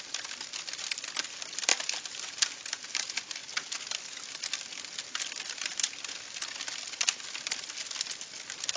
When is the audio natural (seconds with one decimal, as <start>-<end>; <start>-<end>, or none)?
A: 0.0-1.7; 3.0-8.8

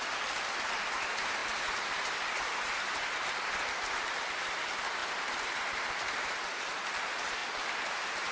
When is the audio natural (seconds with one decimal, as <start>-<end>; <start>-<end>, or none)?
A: 0.0-5.0; 6.6-8.3